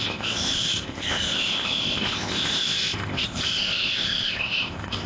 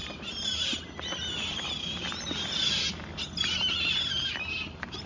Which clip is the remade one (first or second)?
first